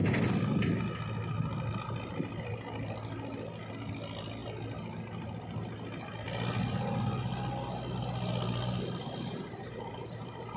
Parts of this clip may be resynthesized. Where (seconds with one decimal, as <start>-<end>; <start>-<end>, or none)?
none